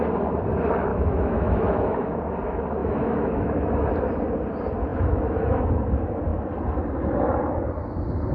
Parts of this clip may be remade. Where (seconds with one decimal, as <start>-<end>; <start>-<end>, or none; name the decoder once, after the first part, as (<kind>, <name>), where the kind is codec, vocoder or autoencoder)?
0.9-2.2 (autoencoder, DAC-VAE); 2.8-3.9; 4.9-5.7